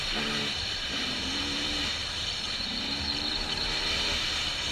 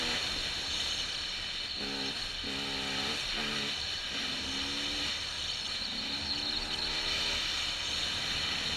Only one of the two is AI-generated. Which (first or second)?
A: first